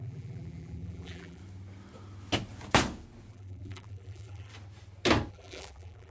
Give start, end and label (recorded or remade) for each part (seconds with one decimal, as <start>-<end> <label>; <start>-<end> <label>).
0.0-1.4 remade; 1.4-3.3 recorded; 3.3-4.5 remade; 4.5-5.3 recorded; 5.3-6.1 remade